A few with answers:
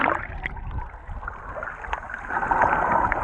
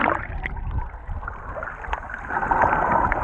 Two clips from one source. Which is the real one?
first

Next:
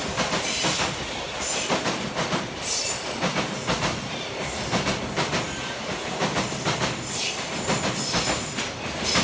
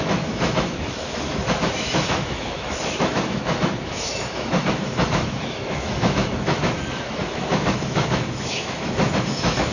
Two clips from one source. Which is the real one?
first